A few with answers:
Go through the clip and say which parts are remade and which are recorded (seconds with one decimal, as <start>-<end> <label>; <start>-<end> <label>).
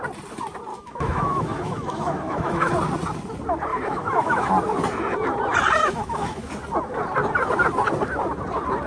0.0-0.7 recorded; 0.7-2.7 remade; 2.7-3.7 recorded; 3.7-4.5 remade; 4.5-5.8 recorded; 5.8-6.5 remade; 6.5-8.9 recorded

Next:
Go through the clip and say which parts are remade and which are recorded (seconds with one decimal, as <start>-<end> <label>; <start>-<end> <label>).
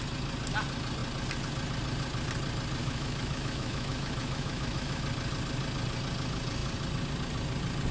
0.0-2.8 recorded; 2.8-5.0 remade; 5.0-7.9 recorded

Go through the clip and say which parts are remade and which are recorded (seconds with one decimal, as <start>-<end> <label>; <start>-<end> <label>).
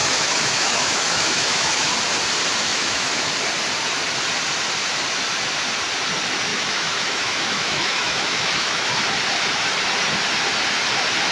0.0-1.9 remade; 1.9-2.7 recorded; 2.7-3.3 remade; 3.3-6.5 recorded; 6.5-8.9 remade; 8.9-11.3 recorded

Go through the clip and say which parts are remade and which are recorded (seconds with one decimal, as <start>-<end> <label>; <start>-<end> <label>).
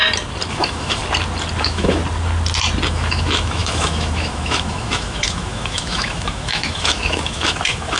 0.0-0.5 recorded; 0.5-1.0 remade; 1.0-1.6 recorded; 1.6-2.0 remade; 2.0-2.9 recorded; 2.9-8.0 remade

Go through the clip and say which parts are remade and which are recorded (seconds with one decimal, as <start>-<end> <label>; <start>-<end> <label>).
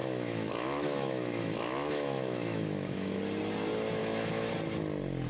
0.0-3.2 remade; 3.2-4.0 recorded; 4.0-4.5 remade; 4.5-5.3 recorded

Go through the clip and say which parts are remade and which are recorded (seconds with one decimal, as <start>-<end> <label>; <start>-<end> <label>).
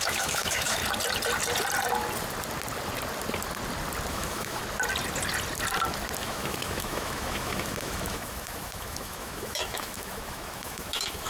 0.0-0.8 remade; 0.8-4.1 recorded; 4.1-4.6 remade; 4.6-6.2 recorded; 6.2-11.3 remade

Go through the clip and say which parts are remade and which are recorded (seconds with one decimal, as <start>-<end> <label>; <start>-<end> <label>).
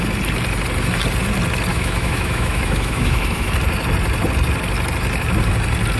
0.0-1.7 recorded; 1.7-3.5 remade; 3.5-6.0 recorded